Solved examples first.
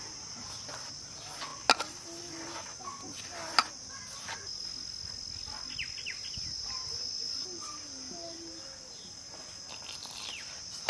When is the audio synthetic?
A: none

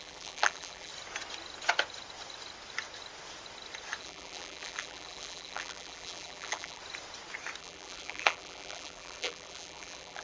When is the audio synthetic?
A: 0.0-0.9 (vocoder, BigVGAN v2); 4.0-6.8; 7.6-10.2